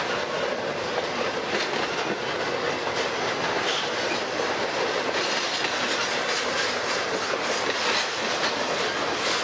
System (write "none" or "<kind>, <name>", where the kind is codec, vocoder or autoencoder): none